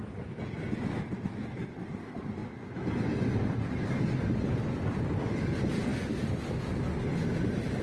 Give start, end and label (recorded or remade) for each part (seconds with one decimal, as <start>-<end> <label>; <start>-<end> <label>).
0.0-2.4 remade; 2.4-5.1 recorded; 5.1-7.8 remade